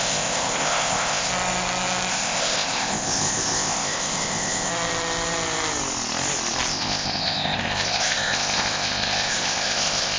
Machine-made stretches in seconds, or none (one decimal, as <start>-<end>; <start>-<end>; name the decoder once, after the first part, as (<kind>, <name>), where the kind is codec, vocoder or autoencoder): 0.0-1.3 (codec, ZipCodec); 2.1-4.7; 6.7-10.2